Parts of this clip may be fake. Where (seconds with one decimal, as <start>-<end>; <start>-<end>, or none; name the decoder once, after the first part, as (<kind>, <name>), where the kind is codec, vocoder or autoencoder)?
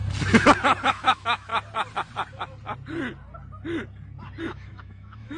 0.9-1.5 (autoencoder, DAC-VAE); 4.4-5.4